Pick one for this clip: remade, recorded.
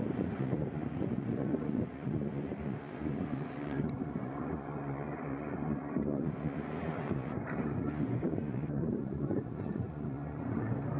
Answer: remade